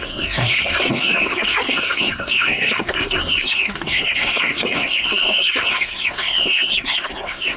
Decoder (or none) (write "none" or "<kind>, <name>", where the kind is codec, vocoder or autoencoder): codec, SNAC